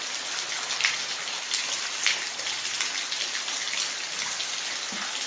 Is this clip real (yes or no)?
yes